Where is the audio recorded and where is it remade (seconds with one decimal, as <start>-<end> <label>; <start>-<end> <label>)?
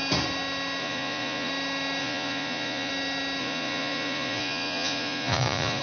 0.0-0.8 recorded; 0.8-1.5 remade; 1.5-2.0 recorded; 2.0-2.9 remade; 2.9-3.4 recorded; 3.4-5.8 remade